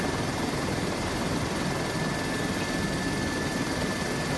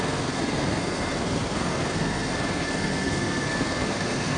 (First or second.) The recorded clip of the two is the first